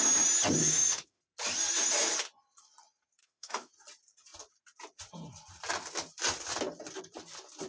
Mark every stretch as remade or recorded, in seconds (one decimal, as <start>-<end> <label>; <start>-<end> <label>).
0.0-0.6 recorded; 0.6-1.2 remade; 1.2-3.2 recorded; 3.2-3.7 remade; 3.7-7.7 recorded